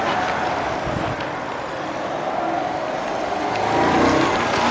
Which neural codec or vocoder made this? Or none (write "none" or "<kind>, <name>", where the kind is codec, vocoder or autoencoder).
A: none